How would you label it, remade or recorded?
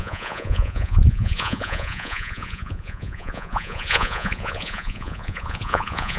remade